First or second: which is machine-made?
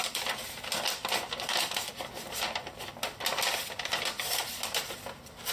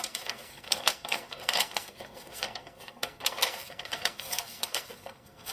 second